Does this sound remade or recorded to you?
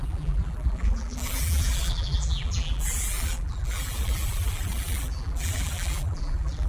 remade